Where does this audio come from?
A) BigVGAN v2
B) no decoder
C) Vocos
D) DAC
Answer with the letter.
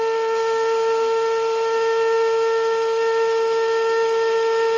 B